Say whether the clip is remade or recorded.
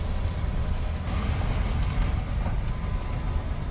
recorded